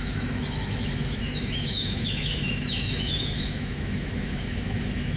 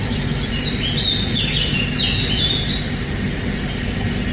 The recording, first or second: second